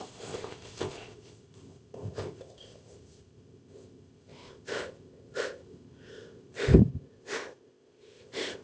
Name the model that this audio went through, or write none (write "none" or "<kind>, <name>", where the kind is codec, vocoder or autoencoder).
codec, ZipCodec